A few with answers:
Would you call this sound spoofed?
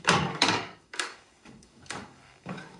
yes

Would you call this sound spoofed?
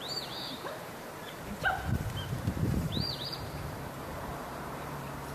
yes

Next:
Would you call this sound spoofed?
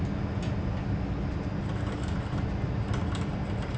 no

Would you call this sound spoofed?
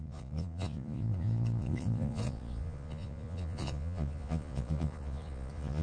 yes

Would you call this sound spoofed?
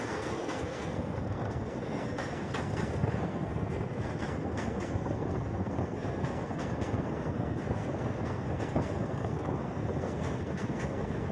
yes